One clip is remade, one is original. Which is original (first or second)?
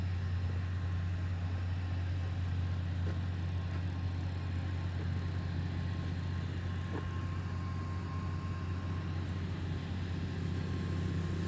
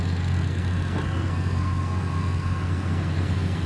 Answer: first